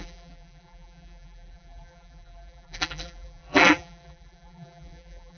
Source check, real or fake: fake